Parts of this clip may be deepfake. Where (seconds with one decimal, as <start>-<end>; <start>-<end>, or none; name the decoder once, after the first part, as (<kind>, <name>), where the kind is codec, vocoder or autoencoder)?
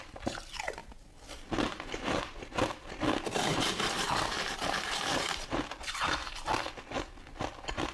3.5-6.5 (vocoder, BigVGAN v2)